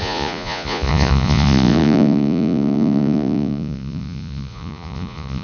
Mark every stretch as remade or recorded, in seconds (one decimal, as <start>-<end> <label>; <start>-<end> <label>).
0.0-5.4 remade